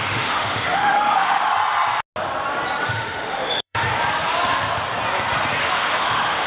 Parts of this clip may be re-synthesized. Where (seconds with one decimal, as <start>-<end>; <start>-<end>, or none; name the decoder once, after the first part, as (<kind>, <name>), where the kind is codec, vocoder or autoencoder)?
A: 0.0-1.5 (autoencoder, DAC-VAE); 2.9-3.9; 5.6-6.5